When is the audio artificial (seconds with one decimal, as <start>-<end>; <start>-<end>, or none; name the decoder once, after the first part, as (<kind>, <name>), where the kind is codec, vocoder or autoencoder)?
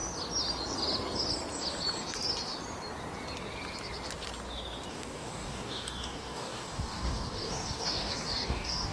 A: 4.9-8.9 (codec, DAC)